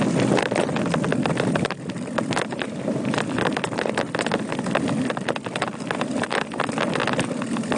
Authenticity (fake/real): real